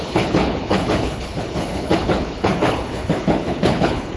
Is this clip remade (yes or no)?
yes